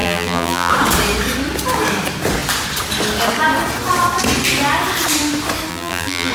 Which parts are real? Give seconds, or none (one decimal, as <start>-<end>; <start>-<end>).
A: 0.7-5.7